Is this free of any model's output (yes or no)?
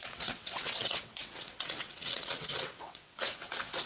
no